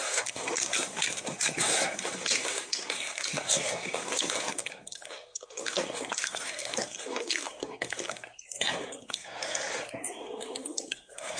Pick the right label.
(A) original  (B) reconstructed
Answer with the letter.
B